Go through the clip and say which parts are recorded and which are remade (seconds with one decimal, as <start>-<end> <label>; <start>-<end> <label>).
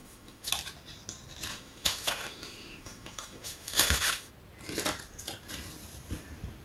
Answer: 0.0-0.5 remade; 0.5-1.5 recorded; 1.5-4.3 remade; 4.3-6.6 recorded